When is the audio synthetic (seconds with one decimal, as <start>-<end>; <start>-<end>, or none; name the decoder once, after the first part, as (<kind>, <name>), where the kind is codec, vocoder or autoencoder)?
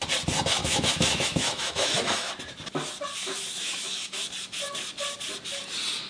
0.6-2.3 (autoencoder, DAC-VAE); 3.2-4.3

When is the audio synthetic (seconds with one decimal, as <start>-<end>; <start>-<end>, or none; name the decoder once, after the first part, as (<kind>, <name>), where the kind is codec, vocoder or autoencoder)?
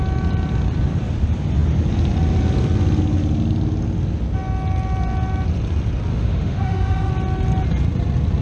6.1-7.1 (autoencoder, DAC-VAE)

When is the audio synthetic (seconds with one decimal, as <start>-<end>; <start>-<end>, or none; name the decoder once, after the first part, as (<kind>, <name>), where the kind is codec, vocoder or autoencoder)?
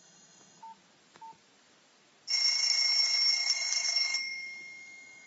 0.0-0.6 (autoencoder, DAC-VAE); 3.4-5.3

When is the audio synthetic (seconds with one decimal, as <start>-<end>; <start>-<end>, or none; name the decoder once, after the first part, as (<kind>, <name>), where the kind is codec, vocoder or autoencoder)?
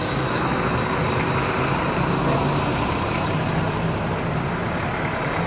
0.0-0.5 (autoencoder, DAC-VAE)